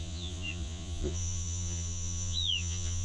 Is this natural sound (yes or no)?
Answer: no